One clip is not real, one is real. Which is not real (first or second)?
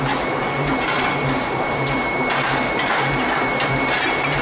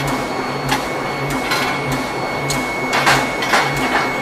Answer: first